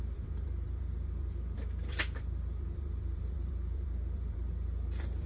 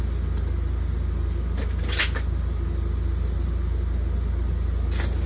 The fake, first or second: first